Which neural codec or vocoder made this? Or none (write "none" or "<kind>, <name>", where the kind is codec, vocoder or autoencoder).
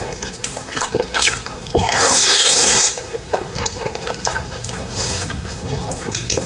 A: codec, SNAC